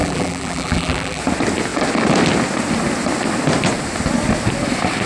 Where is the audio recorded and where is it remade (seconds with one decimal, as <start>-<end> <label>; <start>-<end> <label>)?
0.0-1.2 remade; 1.2-5.1 recorded

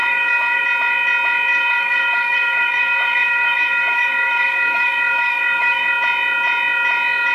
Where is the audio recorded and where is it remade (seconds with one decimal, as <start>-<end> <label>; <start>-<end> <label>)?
0.0-0.6 remade; 0.6-1.5 recorded; 1.5-5.9 remade; 5.9-7.3 recorded

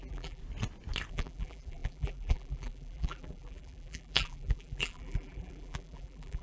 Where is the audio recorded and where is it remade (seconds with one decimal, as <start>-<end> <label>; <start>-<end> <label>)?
0.0-0.4 remade; 0.4-1.1 recorded; 1.1-6.4 remade

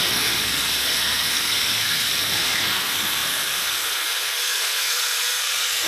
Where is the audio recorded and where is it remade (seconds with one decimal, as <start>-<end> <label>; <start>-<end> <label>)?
0.0-5.9 remade